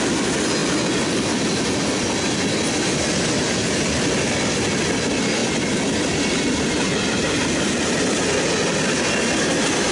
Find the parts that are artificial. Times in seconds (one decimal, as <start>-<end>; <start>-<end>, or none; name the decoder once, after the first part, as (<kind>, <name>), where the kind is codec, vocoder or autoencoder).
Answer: 5.4-6.5 (vocoder, BigVGAN v2)